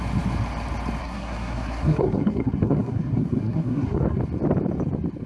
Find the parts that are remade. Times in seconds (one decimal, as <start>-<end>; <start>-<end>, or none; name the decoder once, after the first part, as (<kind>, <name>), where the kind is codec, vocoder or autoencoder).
1.0-4.2 (codec, SNAC)